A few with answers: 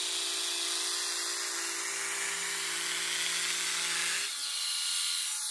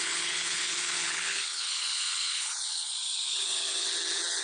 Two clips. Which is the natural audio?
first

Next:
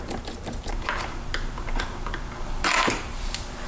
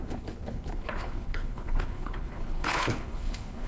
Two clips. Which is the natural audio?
first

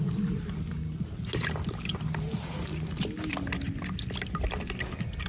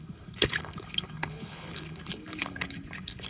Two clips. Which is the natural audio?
first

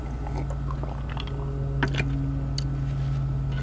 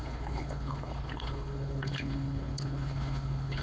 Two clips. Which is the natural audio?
first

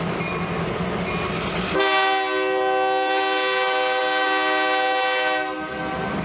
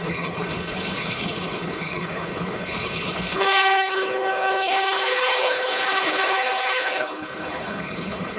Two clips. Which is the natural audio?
first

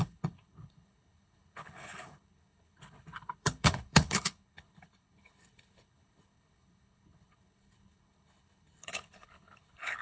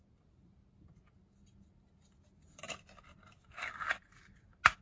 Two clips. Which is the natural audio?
second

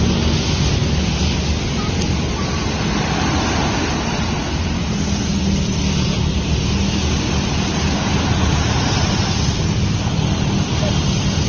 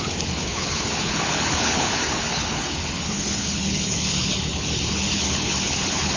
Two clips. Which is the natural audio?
first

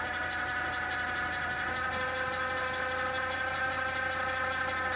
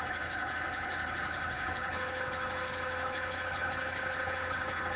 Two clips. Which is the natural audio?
first